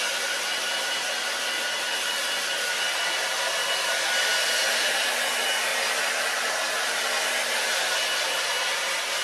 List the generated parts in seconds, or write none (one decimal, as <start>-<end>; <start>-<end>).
none